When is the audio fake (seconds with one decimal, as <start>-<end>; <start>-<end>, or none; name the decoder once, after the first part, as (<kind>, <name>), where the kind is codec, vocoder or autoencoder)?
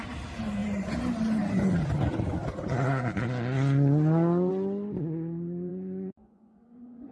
5.7-7.1 (vocoder, Vocos)